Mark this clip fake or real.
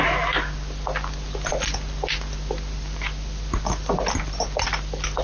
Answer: real